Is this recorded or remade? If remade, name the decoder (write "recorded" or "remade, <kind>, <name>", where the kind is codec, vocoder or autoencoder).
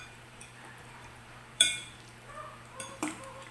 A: remade, vocoder, BigVGAN v2